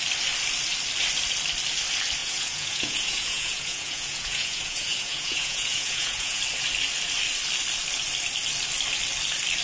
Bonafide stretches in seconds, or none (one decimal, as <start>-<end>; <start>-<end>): 0.0-2.2; 6.4-9.6